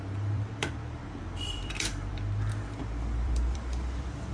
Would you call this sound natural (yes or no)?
no